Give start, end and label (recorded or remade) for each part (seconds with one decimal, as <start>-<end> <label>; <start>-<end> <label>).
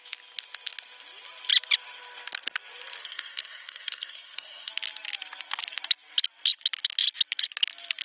0.0-3.0 recorded; 3.0-4.7 remade; 4.7-8.0 recorded